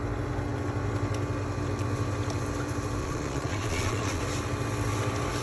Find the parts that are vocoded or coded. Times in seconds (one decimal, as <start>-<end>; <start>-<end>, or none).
3.0-4.2